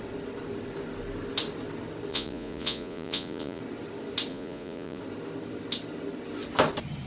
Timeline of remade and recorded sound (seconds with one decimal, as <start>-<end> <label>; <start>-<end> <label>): 0.0-2.1 recorded; 2.1-3.6 remade; 3.6-4.3 recorded; 4.3-5.0 remade; 5.0-7.1 recorded